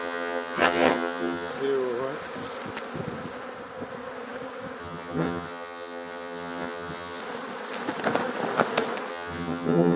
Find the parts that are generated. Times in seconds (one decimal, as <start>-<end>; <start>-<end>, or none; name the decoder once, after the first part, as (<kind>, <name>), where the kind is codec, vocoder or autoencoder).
0.0-1.5 (vocoder, HiFi-GAN); 4.8-7.2; 9.1-10.0